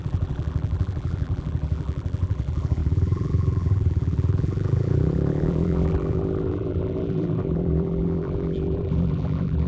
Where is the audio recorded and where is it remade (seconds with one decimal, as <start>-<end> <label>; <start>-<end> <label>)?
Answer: 0.0-9.7 remade